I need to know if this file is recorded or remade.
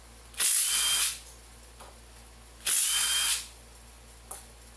recorded